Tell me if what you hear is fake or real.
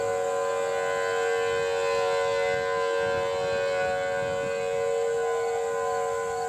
real